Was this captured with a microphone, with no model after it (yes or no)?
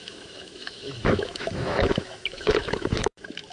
no